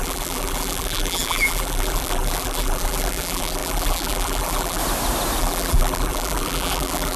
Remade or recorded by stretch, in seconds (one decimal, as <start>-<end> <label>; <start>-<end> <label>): 0.0-4.8 remade; 4.8-5.4 recorded; 5.4-7.2 remade